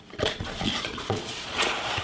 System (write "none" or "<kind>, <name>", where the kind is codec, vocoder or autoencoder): vocoder, Vocos